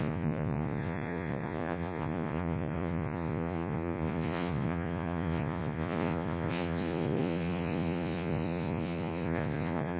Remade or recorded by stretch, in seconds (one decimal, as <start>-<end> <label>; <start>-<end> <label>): 0.0-10.0 remade